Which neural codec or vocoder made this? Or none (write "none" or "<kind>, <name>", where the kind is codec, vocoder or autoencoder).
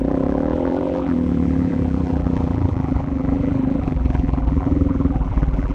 vocoder, BigVGAN v2